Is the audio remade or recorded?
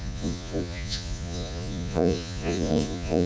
remade